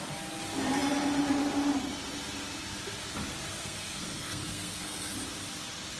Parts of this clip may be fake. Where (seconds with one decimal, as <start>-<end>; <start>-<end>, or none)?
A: 3.6-5.1